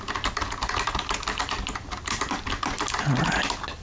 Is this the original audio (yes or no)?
yes